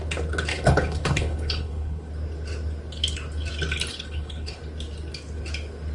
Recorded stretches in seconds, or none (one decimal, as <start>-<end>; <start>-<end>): 0.0-0.5; 2.1-3.9; 4.6-5.9